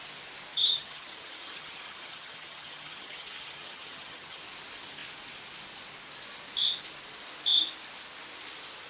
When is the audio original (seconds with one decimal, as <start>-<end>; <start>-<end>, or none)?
0.0-0.5; 4.4-8.9

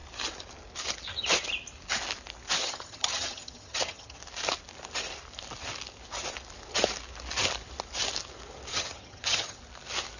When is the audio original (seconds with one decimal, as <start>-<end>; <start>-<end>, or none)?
0.0-2.6; 4.2-8.7; 9.6-10.2